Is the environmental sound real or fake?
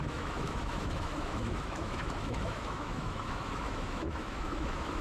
fake